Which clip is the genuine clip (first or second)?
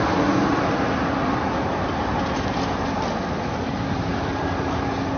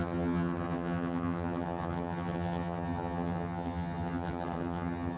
first